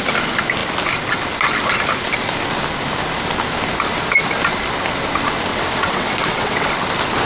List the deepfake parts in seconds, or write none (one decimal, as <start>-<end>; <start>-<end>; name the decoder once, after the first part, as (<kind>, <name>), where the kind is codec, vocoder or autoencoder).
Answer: 5.5-6.7 (vocoder, WaveNeXt)